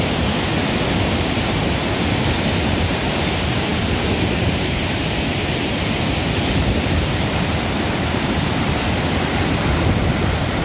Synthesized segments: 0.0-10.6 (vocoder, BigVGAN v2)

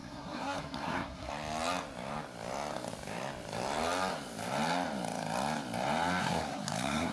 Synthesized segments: 0.0-1.3 (codec, SNAC); 6.2-7.1